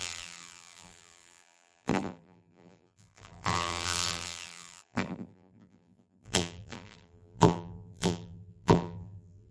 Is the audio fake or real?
fake